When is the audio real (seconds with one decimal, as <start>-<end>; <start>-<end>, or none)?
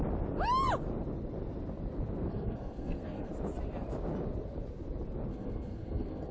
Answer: 0.0-2.3; 3.3-5.3